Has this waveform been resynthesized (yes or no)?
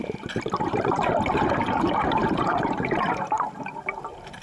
yes